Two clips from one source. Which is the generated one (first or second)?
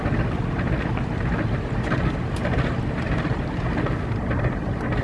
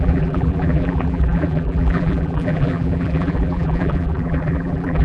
second